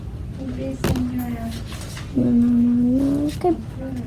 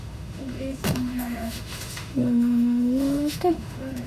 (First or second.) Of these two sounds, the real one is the first